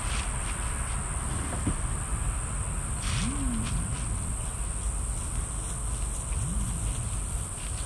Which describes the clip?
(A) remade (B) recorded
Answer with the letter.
B